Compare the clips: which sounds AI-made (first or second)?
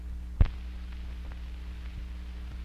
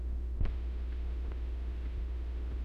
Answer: second